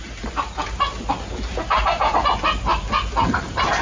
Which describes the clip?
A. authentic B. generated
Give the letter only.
A